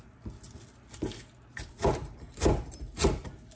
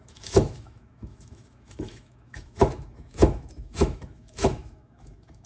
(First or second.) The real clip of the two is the first